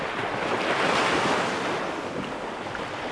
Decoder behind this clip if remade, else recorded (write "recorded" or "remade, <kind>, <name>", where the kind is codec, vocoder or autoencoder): recorded